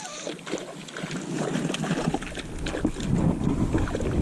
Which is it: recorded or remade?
recorded